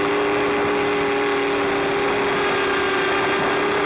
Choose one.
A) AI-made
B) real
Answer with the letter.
B